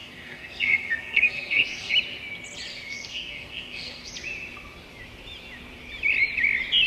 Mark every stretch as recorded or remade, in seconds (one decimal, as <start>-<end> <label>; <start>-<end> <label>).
0.0-1.9 remade; 1.9-2.7 recorded; 2.7-4.1 remade; 4.1-6.9 recorded